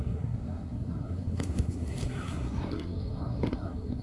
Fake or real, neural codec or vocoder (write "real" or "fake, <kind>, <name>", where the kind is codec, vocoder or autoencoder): fake, codec, SNAC